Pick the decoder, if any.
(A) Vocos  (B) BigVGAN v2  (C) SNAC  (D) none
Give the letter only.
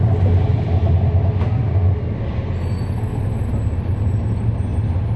D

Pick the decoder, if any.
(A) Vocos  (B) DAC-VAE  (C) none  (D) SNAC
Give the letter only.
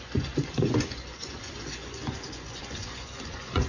A